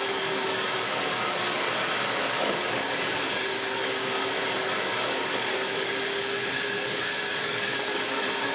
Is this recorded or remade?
remade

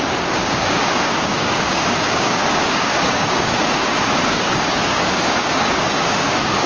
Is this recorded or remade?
remade